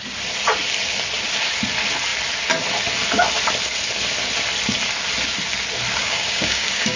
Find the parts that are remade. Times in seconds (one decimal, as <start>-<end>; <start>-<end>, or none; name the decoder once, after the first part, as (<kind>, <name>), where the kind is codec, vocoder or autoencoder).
6.0-7.0 (codec, DAC)